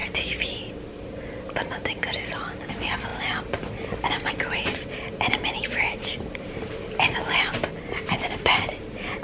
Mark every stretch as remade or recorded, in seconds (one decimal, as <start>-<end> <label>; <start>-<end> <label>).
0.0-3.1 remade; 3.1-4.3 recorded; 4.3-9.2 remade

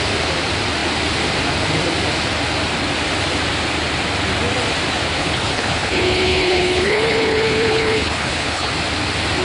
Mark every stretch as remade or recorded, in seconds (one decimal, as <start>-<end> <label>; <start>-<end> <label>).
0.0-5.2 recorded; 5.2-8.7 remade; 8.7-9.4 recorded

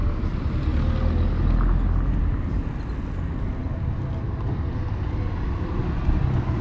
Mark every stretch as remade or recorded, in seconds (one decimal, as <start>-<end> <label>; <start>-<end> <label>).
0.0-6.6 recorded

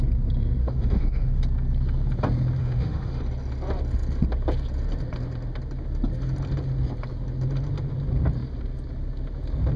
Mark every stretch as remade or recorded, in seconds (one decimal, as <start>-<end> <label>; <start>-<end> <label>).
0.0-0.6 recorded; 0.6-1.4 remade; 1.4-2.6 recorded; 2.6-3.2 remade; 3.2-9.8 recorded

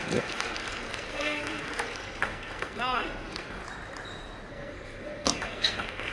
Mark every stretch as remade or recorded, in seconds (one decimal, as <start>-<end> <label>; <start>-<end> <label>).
0.0-3.6 remade; 3.6-4.5 recorded; 4.5-6.1 remade